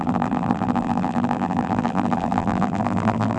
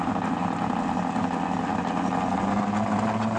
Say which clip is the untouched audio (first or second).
second